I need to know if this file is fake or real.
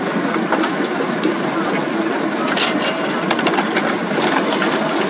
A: real